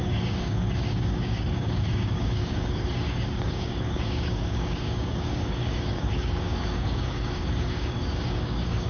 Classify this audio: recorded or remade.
remade